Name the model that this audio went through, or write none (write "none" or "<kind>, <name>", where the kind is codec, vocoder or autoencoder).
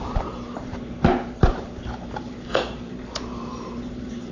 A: vocoder, BigVGAN v2